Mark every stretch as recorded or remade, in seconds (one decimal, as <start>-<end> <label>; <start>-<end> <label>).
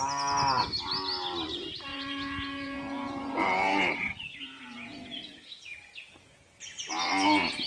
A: 0.0-1.9 recorded; 1.9-6.4 remade; 6.4-7.7 recorded